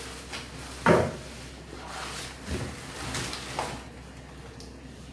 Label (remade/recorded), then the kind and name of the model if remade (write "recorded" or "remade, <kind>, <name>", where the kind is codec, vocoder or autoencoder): recorded